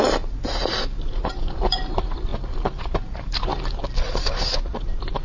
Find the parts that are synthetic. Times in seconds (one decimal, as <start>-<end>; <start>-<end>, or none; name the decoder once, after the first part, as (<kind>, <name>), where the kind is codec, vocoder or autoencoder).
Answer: 0.0-3.5 (vocoder, BigVGAN v2); 4.6-5.2